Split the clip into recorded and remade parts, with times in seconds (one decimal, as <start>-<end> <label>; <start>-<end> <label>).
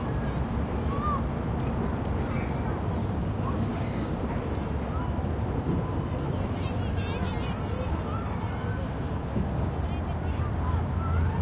0.0-3.0 recorded; 3.0-4.2 remade; 4.2-8.7 recorded; 8.7-9.7 remade; 9.7-11.4 recorded